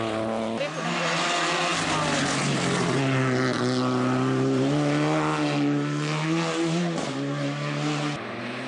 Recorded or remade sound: recorded